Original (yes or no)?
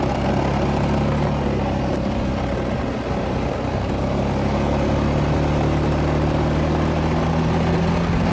yes